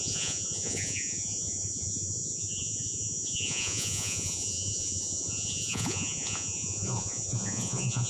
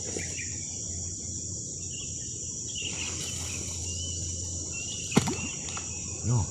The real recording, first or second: second